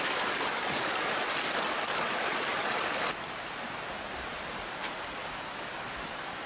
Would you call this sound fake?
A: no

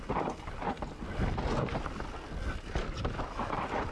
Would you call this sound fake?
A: no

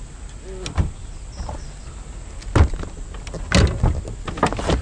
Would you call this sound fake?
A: no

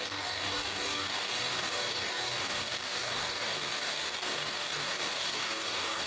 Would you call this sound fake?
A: yes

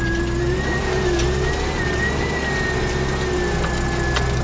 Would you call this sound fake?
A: no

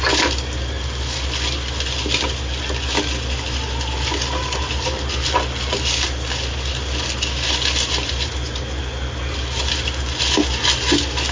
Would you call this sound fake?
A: no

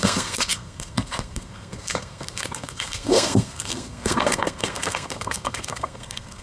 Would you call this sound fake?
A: yes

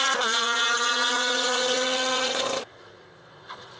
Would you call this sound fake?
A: yes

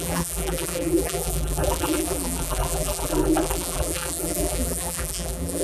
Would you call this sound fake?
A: yes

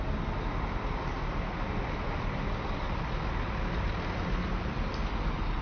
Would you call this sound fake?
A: no